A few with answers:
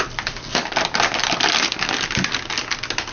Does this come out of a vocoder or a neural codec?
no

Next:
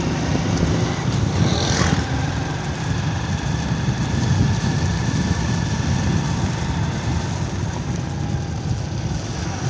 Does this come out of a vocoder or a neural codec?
no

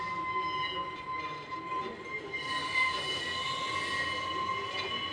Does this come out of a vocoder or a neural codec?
no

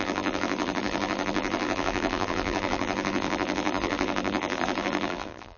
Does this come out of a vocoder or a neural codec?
yes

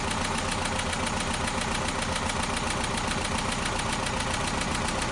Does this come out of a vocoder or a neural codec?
no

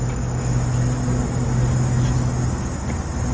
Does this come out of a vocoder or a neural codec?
no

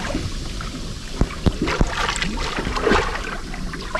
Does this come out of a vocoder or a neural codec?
no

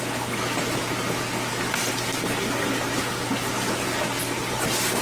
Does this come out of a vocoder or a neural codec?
no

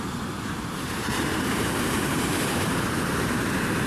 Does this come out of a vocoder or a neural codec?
yes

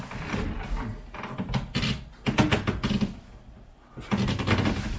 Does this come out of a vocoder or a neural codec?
no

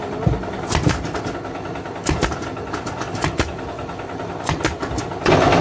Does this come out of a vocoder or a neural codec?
no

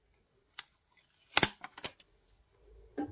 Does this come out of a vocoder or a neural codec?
no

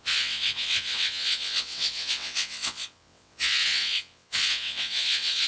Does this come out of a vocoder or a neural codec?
yes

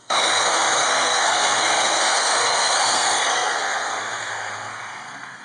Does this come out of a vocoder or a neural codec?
yes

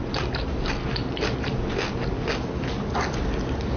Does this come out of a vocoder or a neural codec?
no